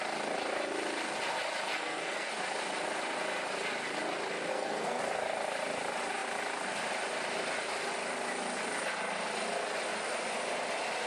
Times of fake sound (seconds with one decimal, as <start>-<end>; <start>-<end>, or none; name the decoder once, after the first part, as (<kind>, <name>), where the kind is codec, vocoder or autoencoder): 1.7-2.3 (codec, SNAC); 4.5-5.0